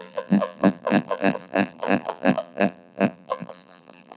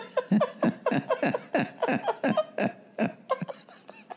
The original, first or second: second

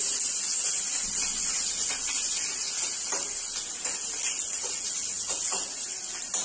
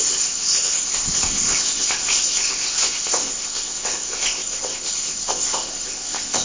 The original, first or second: first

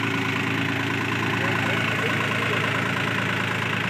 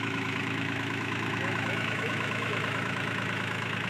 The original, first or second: first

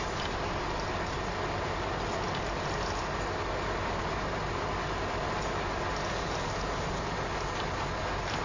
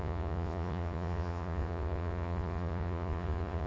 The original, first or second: first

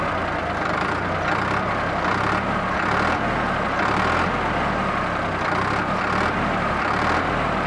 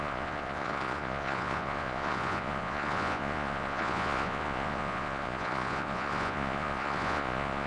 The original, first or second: first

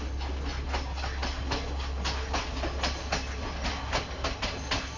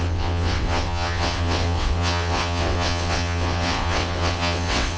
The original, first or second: first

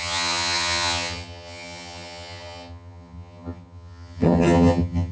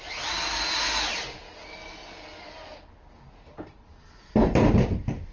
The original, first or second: second